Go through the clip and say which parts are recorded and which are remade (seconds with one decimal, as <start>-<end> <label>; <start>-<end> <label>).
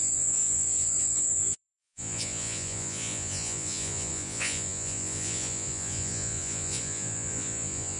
0.0-8.0 remade